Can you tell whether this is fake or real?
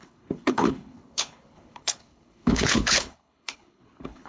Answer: fake